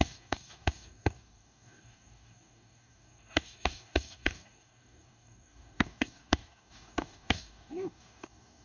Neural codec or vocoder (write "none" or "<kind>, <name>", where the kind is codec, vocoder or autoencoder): codec, DAC